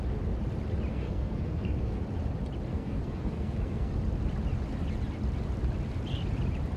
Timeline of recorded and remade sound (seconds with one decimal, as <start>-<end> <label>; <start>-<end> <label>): 0.0-0.9 recorded; 0.9-2.0 remade; 2.0-2.7 recorded; 2.7-3.9 remade; 3.9-6.8 recorded